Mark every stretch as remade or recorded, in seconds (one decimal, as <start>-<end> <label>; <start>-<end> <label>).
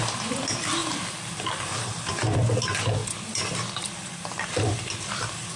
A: 0.0-5.6 recorded